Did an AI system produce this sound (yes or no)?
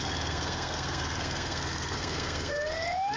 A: yes